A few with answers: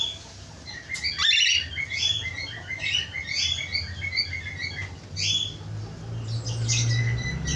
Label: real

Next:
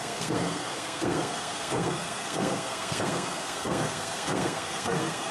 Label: fake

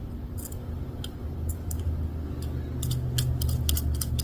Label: real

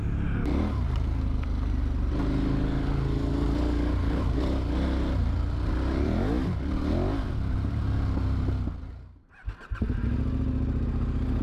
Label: real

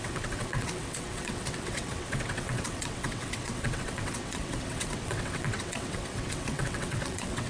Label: fake